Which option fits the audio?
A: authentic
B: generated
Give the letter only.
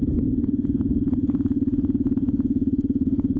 B